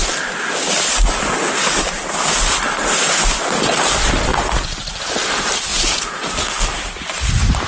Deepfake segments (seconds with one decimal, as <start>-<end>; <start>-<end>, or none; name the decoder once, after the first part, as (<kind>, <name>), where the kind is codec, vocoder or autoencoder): 5.7-6.3 (vocoder, Vocos)

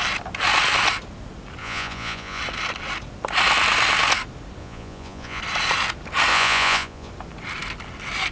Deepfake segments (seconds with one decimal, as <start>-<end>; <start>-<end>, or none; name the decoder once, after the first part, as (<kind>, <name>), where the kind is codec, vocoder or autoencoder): 1.6-2.4 (vocoder, Vocos); 4.6-5.4; 6.3-7.1